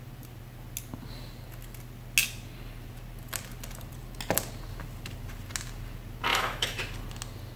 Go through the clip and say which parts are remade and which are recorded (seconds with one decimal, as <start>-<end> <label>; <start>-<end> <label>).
0.0-6.3 recorded; 6.3-6.8 remade; 6.8-7.6 recorded